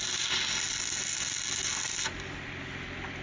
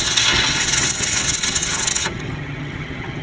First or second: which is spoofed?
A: second